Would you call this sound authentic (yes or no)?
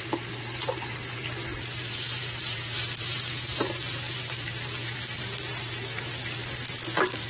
no